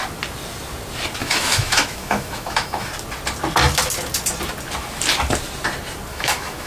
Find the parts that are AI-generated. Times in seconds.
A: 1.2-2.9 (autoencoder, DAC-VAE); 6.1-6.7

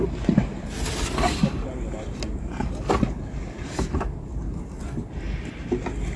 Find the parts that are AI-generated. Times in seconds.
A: none

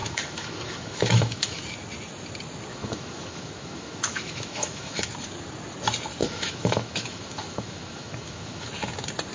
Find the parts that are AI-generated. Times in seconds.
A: 0.0-1.6 (autoencoder, DAC-VAE); 2.7-5.1; 6.2-8.7

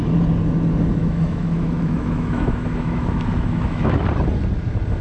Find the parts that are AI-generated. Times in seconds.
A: 1.0-4.0 (autoencoder, DAC-VAE)

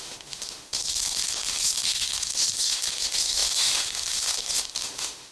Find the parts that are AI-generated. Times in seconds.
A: 0.0-5.3 (autoencoder, DAC-VAE)

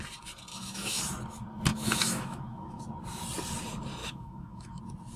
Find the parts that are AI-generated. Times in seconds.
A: 0.5-1.0 (autoencoder, DAC-VAE); 1.7-2.8; 4.0-4.8